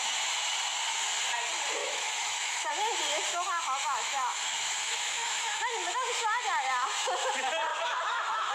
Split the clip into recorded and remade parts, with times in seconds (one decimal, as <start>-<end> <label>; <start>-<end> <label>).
0.0-1.8 recorded; 1.8-2.7 remade; 2.7-3.3 recorded; 3.3-6.1 remade; 6.1-7.7 recorded; 7.7-8.5 remade